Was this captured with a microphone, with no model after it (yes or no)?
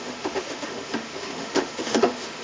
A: no